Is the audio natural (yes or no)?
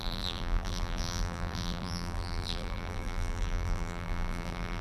no